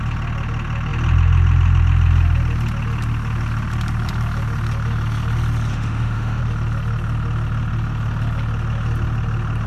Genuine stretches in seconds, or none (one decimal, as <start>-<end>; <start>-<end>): 0.0-5.7; 6.4-9.7